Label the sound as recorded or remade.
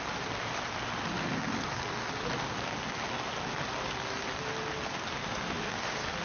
recorded